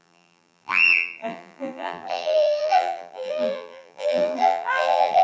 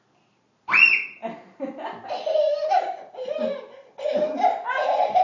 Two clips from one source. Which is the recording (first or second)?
second